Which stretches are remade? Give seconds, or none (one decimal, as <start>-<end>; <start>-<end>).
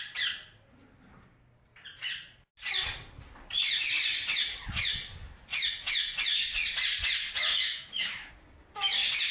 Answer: 7.5-8.3